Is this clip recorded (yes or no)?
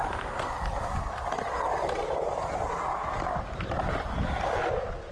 yes